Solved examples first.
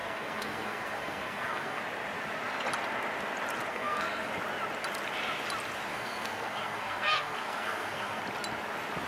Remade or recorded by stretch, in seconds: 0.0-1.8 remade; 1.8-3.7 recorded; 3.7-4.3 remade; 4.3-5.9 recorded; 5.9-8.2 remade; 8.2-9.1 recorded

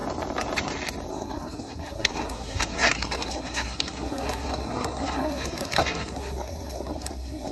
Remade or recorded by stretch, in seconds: 0.0-1.1 recorded; 1.1-7.5 remade

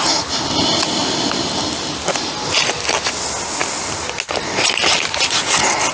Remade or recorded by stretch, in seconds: 0.0-5.9 recorded

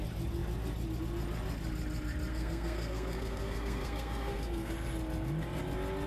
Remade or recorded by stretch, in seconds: 0.0-2.3 recorded; 2.3-4.7 remade; 4.7-6.1 recorded

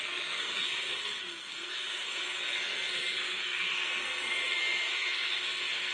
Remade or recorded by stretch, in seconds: 0.0-5.9 remade